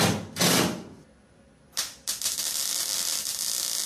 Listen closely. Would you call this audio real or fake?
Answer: real